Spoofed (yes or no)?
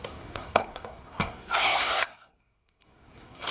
yes